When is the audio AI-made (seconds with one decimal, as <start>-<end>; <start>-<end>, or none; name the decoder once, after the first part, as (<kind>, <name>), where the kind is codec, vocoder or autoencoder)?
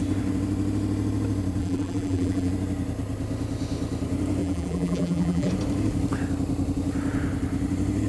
1.6-2.5 (vocoder, BigVGAN v2); 4.4-5.5